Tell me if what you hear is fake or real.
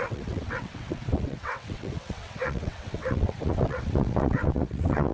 fake